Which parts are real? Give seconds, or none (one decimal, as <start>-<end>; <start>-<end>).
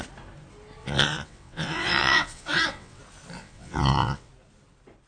0.0-0.8; 3.0-3.4; 4.3-5.1